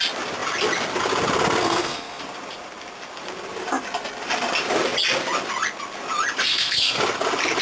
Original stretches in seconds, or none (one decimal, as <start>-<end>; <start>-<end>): 0.0-1.6; 2.2-6.5; 7.0-7.6

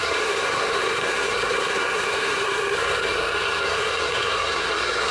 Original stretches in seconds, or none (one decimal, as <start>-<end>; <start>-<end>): none

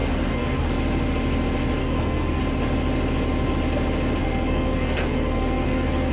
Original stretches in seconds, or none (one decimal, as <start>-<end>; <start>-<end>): 0.7-1.8; 2.4-4.2